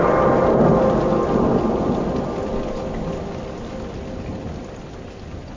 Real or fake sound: real